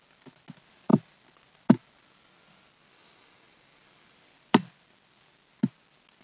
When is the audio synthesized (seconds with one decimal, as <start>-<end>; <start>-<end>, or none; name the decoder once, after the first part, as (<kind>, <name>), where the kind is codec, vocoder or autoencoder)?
none